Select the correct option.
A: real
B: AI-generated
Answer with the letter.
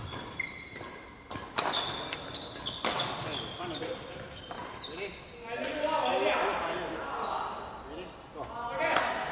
A